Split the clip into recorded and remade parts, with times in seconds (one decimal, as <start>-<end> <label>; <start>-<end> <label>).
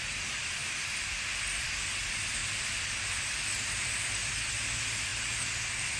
0.0-6.0 recorded